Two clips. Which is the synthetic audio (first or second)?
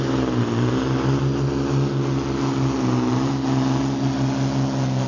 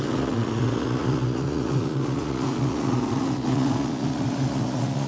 second